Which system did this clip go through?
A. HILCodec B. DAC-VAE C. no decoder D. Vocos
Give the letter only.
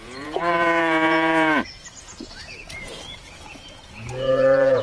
D